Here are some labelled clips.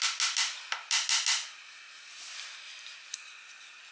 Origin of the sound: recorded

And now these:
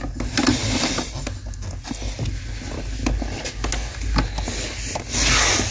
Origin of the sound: recorded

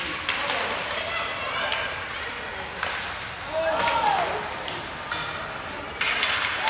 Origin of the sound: recorded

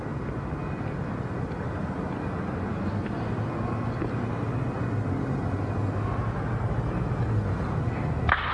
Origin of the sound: recorded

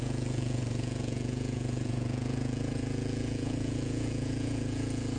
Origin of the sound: remade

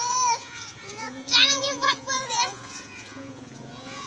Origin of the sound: remade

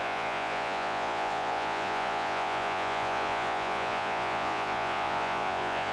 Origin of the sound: remade